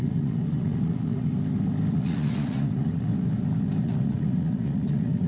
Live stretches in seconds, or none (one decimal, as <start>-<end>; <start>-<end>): 1.3-1.9; 3.1-3.8